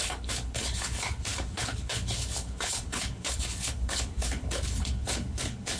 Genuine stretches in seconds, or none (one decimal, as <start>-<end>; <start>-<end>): none